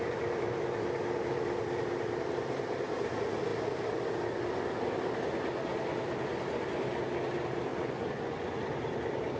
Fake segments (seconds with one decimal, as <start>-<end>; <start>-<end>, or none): 7.7-8.6

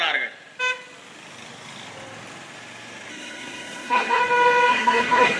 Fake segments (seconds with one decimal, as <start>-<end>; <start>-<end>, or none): 3.1-4.2; 4.7-5.4

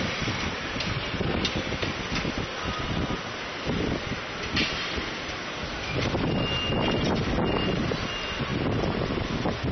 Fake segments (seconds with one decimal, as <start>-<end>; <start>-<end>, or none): none

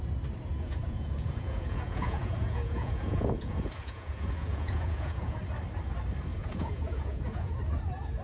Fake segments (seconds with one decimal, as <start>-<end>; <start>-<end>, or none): 0.5-5.4; 6.3-7.6